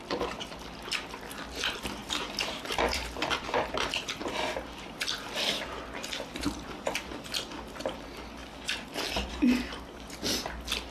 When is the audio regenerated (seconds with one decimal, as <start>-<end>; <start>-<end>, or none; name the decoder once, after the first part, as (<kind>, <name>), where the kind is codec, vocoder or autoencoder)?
2.0-3.9 (vocoder, BigVGAN v2)

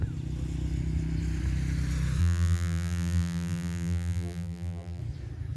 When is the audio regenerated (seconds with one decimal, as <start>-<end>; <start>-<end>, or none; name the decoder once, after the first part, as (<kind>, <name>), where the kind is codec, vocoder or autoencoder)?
2.2-5.0 (vocoder, BigVGAN v2)

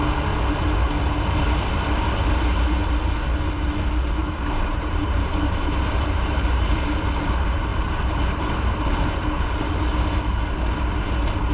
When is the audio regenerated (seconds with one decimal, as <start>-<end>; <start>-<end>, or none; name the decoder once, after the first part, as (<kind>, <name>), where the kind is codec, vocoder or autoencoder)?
4.2-7.3 (vocoder, BigVGAN v2); 7.7-9.8

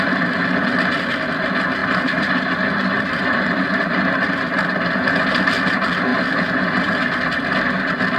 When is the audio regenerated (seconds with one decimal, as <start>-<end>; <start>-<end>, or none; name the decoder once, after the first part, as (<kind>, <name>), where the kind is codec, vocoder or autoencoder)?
1.8-4.3 (vocoder, BigVGAN v2)

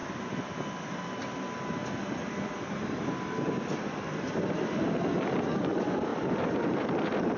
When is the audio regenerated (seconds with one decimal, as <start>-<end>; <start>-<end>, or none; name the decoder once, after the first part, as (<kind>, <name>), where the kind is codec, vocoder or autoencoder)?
none

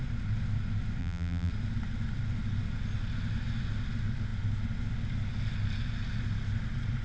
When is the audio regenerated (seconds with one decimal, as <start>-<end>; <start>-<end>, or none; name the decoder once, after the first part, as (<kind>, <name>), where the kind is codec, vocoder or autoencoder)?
1.0-1.5 (vocoder, BigVGAN v2)

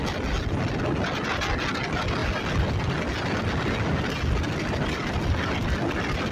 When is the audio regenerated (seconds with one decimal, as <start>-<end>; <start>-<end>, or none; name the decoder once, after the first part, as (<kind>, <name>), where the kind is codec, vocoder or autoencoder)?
none